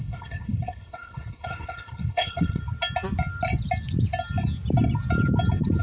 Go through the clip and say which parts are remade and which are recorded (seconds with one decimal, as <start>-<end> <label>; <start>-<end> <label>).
0.0-2.6 remade; 2.6-5.8 recorded